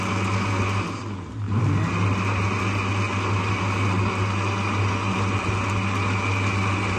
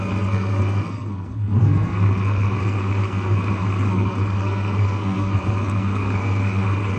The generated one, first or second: second